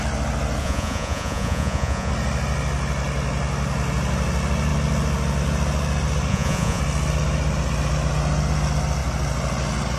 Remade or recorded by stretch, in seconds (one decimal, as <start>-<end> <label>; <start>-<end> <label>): 0.0-0.6 recorded; 0.6-2.1 remade; 2.1-6.3 recorded; 6.3-6.8 remade; 6.8-10.0 recorded